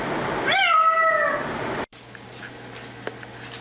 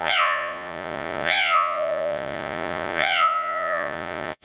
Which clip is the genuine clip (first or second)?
first